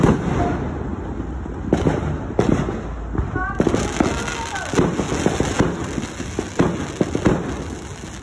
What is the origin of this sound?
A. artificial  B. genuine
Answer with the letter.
B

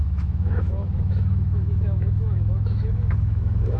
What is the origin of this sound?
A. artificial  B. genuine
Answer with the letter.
A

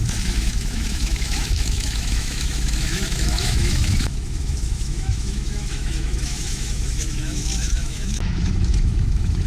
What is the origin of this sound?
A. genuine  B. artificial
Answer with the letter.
B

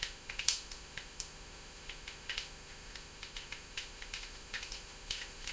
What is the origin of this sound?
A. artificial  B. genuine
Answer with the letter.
A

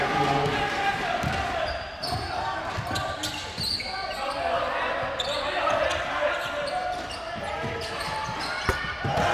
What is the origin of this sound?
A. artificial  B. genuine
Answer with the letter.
B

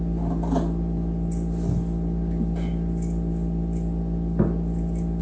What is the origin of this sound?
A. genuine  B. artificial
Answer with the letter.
A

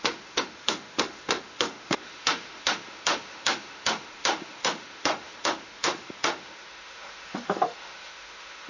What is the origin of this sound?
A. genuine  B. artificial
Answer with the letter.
B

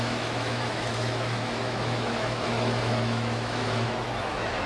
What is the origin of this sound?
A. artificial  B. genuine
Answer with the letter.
A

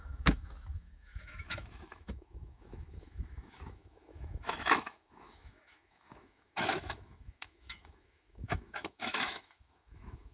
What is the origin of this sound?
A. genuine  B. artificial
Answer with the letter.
B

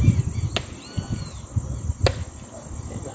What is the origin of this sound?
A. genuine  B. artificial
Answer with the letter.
A